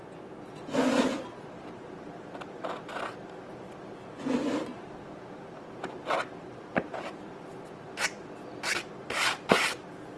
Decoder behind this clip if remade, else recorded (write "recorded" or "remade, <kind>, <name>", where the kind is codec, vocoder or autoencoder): remade, vocoder, BigVGAN v2